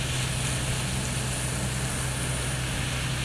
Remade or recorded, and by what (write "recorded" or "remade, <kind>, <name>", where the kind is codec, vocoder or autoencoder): recorded